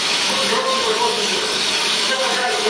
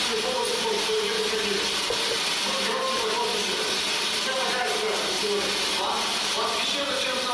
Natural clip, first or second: second